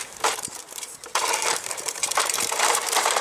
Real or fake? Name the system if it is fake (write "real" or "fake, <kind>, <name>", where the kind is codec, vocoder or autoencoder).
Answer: fake, vocoder, BigVGAN v2